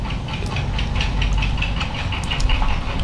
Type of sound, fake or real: real